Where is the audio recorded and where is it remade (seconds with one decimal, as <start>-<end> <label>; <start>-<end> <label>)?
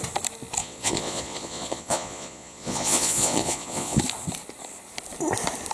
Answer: 0.0-0.6 recorded; 0.6-4.0 remade; 4.0-5.7 recorded